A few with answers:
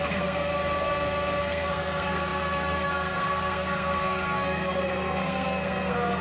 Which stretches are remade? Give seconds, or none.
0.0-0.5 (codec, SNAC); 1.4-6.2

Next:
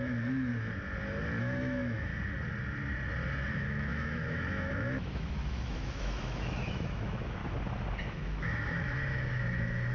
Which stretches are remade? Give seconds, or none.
0.0-0.5 (autoencoder, DAC-VAE); 1.4-2.1; 3.5-7.4; 8.0-9.9

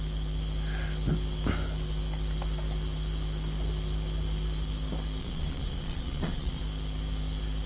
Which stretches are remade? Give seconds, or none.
5.2-6.6 (vocoder, Vocos)

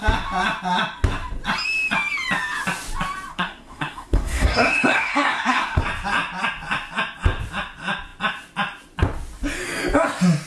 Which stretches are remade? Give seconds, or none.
3.3-5.8 (codec, SNAC)

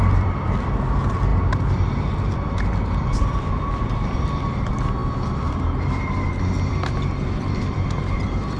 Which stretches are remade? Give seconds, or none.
0.0-8.6 (vocoder, BigVGAN v2)

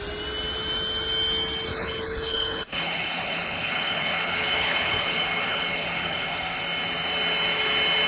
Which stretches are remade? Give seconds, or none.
1.7-6.6 (codec, HILCodec)

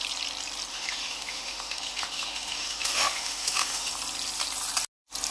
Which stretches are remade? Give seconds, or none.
0.7-3.9 (autoencoder, DAC-VAE)